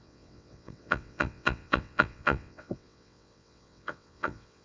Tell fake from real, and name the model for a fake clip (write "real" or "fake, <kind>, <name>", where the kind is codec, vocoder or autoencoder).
fake, vocoder, WaveNeXt